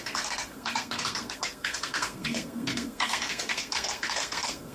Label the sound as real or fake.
fake